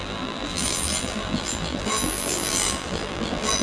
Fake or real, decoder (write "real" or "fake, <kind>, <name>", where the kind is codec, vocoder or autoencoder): fake, vocoder, BigVGAN v2